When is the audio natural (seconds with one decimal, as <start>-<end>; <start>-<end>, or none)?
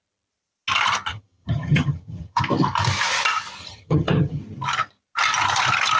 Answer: 0.0-1.1; 2.4-3.6; 4.4-6.0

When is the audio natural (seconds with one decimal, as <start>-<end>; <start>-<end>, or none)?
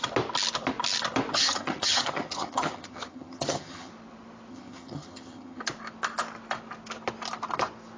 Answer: 0.0-1.3; 3.9-4.5; 5.6-8.0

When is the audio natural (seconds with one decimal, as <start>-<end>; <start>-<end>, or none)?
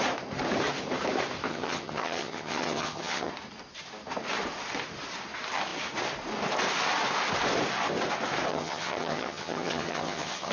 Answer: 0.0-1.5; 3.3-8.5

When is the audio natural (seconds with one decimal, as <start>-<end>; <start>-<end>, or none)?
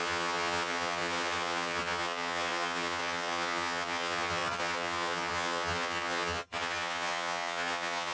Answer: none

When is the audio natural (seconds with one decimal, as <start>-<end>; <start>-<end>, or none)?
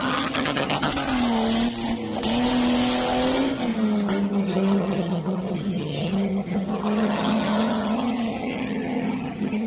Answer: 0.9-4.3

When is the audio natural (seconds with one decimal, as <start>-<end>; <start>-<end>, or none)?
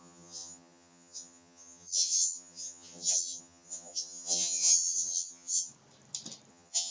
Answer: 5.7-6.5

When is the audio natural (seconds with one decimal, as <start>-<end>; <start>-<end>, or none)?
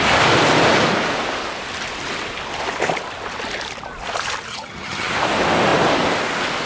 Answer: 0.0-4.5; 5.1-6.7